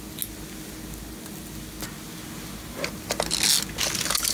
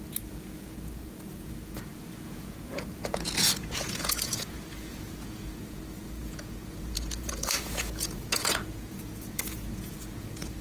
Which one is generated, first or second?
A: second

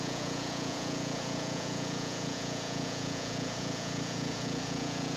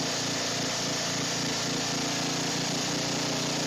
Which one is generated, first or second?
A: first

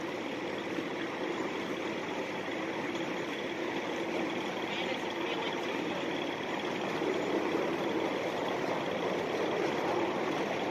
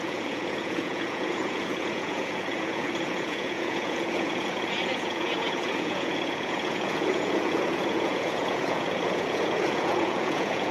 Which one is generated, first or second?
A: second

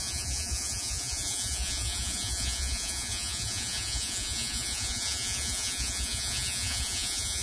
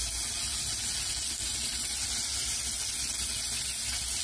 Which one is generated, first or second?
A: first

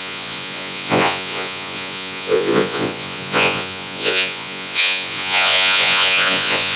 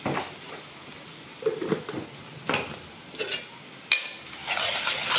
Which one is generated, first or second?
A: first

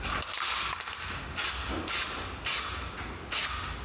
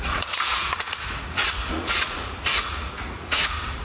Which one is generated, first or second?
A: second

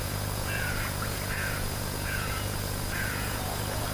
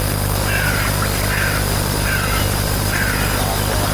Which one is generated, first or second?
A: first